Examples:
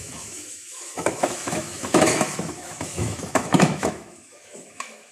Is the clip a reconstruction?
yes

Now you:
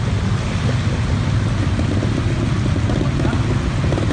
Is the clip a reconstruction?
no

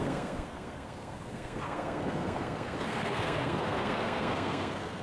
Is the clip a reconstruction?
yes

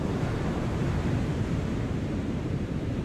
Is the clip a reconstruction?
yes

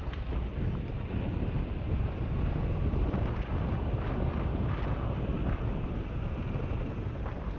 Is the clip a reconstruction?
no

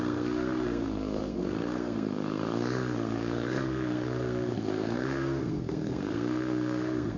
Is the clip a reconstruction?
yes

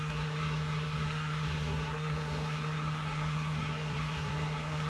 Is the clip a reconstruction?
yes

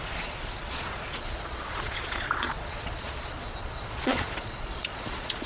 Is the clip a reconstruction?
yes